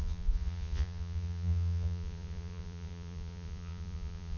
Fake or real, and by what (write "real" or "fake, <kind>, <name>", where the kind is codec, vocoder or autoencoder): fake, vocoder, Vocos